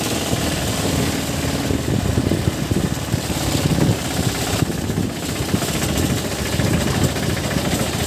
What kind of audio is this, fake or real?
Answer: real